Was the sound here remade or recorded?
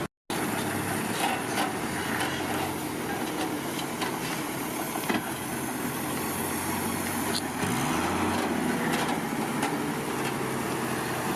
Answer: recorded